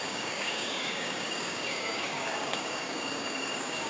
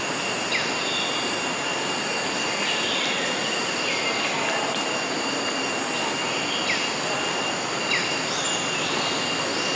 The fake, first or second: first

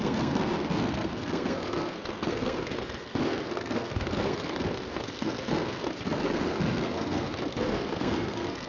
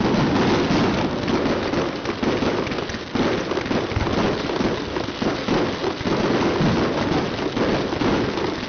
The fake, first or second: first